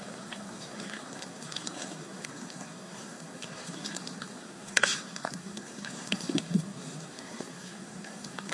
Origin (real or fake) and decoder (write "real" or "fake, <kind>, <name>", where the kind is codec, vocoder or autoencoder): fake, codec, SNAC